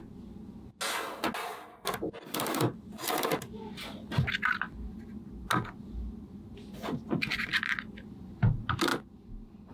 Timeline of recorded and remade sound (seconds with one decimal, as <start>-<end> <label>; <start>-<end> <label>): 0.0-9.7 recorded